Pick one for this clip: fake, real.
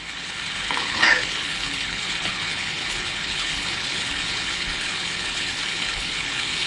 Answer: fake